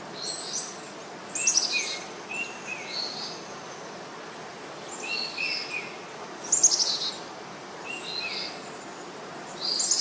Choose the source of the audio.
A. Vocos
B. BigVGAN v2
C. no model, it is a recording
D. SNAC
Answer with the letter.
C